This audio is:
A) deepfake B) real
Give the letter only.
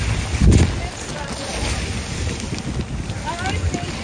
B